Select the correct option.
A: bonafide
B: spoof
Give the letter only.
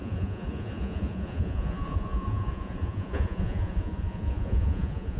B